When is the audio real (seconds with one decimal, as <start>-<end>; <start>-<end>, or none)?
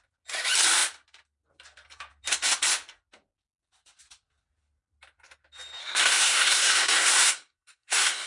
0.0-5.8